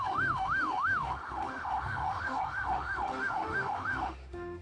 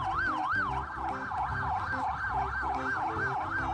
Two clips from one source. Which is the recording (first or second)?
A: second